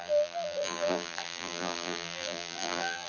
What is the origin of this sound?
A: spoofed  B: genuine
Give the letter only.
A